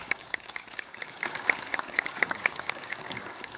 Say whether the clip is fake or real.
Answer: fake